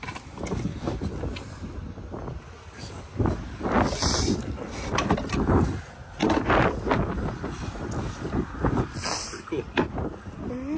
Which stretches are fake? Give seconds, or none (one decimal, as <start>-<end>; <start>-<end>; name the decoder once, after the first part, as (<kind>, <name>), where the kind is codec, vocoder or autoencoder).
none